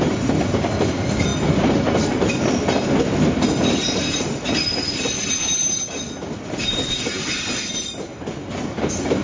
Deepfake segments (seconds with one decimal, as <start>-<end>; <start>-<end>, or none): none